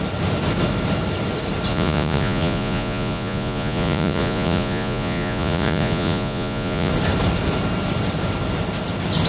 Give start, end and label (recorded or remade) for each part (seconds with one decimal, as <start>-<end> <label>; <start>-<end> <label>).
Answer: 0.0-1.7 recorded; 1.7-6.9 remade; 6.9-9.3 recorded